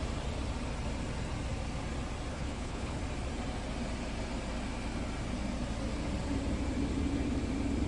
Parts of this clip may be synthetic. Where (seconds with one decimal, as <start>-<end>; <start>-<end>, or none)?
2.3-3.0